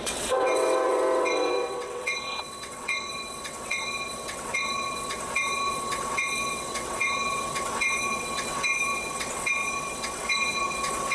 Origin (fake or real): fake